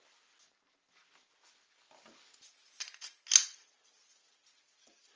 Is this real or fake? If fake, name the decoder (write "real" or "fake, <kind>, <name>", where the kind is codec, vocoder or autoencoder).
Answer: real